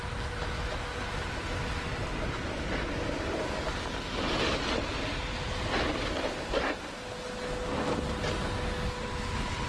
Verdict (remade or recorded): recorded